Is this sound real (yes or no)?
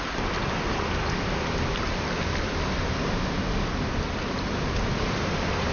yes